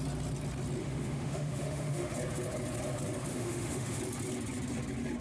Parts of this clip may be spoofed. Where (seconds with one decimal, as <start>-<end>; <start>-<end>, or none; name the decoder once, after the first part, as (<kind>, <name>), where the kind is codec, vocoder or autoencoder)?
0.8-2.1 (autoencoder, DAC-VAE); 3.3-4.0